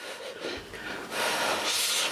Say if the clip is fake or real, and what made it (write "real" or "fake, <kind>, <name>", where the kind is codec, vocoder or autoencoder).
real